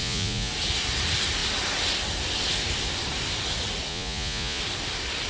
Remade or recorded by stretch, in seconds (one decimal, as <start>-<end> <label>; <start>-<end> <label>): 0.0-0.5 remade; 0.5-3.9 recorded; 3.9-4.6 remade; 4.6-5.3 recorded